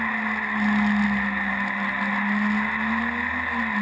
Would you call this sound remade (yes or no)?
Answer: no